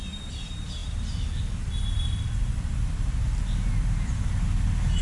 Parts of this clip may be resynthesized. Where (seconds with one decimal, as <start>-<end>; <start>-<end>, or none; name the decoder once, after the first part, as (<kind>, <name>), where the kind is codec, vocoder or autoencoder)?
none